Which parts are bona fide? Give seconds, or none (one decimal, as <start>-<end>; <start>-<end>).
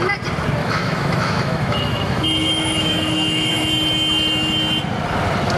0.0-0.6; 3.7-5.6